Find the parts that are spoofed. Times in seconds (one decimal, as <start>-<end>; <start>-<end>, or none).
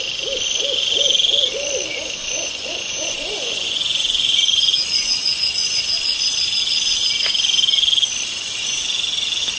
2.2-5.8; 8.3-8.8